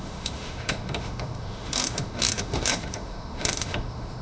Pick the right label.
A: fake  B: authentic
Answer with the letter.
A